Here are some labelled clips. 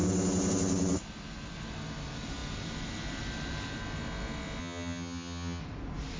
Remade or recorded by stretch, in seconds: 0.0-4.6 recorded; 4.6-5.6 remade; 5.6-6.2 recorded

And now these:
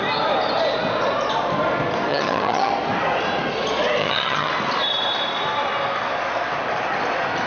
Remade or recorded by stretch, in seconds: 0.0-2.1 recorded; 2.1-2.7 remade; 2.7-4.0 recorded; 4.0-4.5 remade; 4.5-7.5 recorded